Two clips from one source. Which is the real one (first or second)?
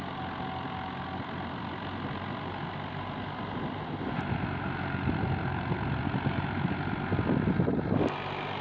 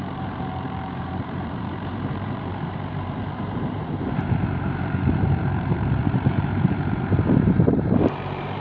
first